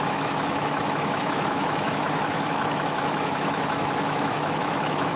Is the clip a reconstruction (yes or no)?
yes